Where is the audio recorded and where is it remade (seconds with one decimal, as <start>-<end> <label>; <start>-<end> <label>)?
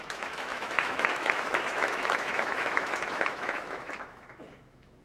0.0-5.0 remade